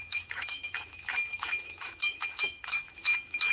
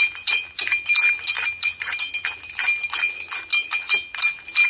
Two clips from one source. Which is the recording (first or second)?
second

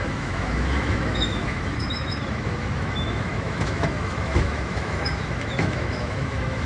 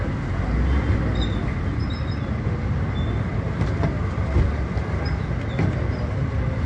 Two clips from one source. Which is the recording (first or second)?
second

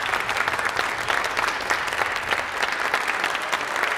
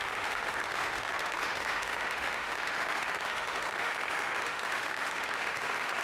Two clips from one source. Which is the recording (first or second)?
first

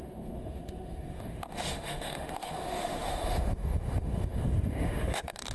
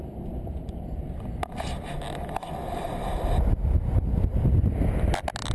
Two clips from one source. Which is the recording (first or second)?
second